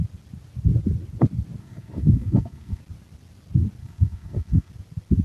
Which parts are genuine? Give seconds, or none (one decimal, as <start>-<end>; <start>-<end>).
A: 0.0-1.6; 2.8-3.8; 4.7-5.2